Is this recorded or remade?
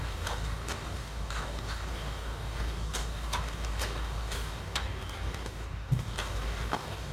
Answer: remade